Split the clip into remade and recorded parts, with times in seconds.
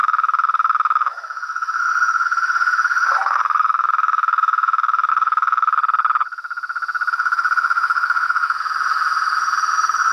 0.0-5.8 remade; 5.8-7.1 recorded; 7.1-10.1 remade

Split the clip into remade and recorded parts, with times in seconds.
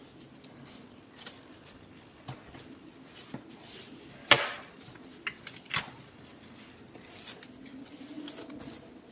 0.0-9.1 recorded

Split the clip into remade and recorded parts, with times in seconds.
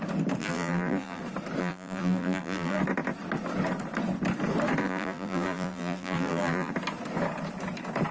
0.0-0.4 recorded; 0.4-1.2 remade; 1.2-1.6 recorded; 1.6-2.8 remade; 2.8-4.8 recorded; 4.8-6.7 remade; 6.7-8.1 recorded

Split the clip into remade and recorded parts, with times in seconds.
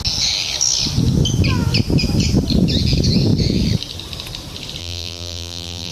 0.0-4.8 recorded; 4.8-5.9 remade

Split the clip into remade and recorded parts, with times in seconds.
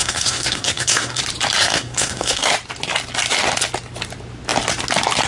0.0-1.2 remade; 1.2-1.6 recorded; 1.6-2.5 remade; 2.5-5.3 recorded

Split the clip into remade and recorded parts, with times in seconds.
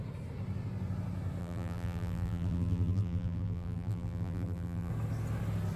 0.0-1.4 recorded; 1.4-4.9 remade; 4.9-5.8 recorded